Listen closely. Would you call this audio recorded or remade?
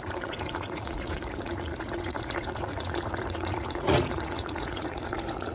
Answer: remade